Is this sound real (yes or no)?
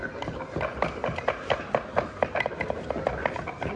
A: yes